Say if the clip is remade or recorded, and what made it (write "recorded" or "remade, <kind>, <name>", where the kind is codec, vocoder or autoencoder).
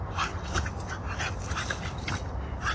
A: recorded